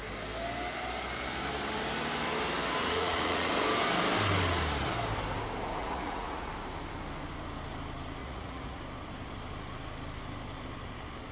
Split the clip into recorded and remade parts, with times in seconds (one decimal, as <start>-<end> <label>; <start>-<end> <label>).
0.0-2.8 recorded; 2.8-3.5 remade; 3.5-5.8 recorded; 5.8-6.5 remade; 6.5-8.2 recorded; 8.2-8.8 remade; 8.8-11.3 recorded